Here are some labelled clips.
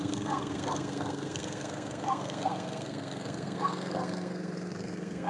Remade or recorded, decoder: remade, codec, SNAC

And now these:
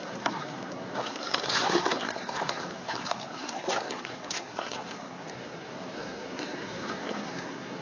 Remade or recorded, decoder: remade, codec, SNAC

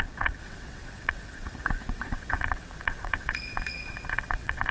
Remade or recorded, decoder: remade, vocoder, WaveNeXt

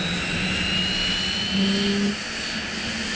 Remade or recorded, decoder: recorded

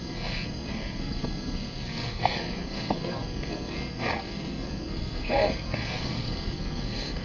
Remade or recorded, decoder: remade, codec, SNAC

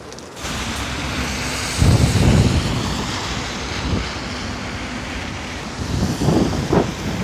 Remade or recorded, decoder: recorded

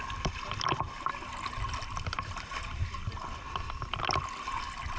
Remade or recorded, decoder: recorded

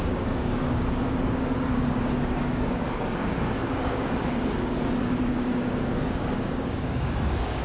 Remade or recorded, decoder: remade, codec, DAC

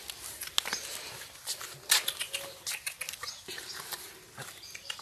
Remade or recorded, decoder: recorded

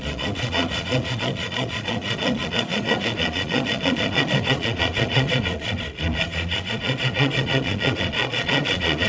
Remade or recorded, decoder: remade, vocoder, Vocos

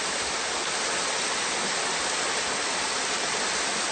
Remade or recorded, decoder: recorded